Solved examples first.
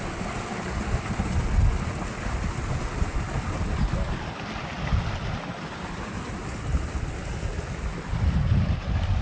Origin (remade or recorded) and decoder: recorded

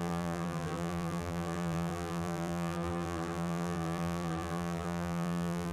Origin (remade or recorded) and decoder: remade, vocoder, BigVGAN v2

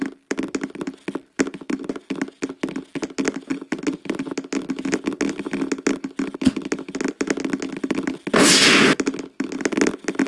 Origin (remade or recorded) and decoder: recorded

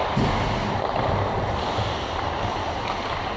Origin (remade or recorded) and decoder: recorded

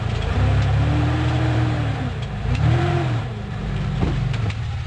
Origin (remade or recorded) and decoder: remade, vocoder, BigVGAN v2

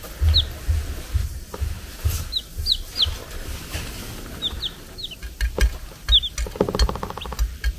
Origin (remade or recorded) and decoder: recorded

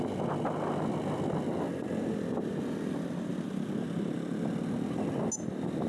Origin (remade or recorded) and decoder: recorded